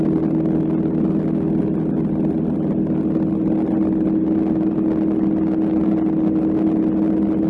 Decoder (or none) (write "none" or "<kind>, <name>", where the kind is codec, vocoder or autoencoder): none